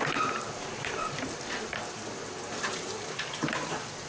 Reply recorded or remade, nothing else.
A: recorded